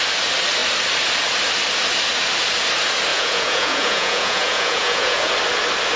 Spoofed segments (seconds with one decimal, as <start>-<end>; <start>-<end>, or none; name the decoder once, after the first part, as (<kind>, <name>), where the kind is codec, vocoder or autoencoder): 3.1-5.3 (vocoder, Vocos)